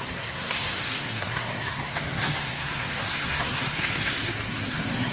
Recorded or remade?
remade